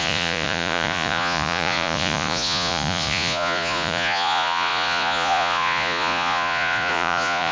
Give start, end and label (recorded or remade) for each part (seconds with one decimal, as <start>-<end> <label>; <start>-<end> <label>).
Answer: 0.0-7.5 remade